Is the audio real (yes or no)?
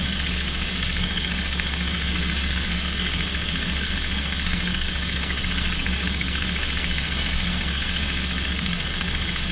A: no